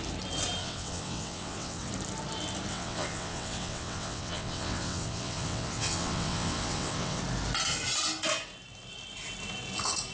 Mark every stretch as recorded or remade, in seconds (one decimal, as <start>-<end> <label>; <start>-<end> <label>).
0.0-0.6 recorded; 0.6-1.9 remade; 1.9-2.7 recorded; 2.7-7.2 remade; 7.2-10.1 recorded